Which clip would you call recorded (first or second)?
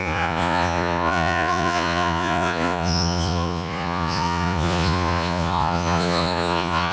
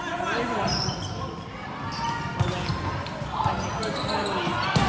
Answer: second